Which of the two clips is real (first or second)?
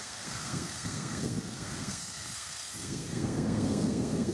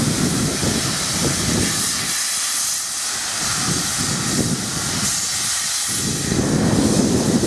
second